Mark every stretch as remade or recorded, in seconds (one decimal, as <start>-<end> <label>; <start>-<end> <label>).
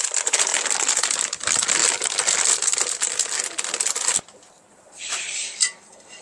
0.0-1.8 remade; 1.8-4.5 recorded; 4.5-6.2 remade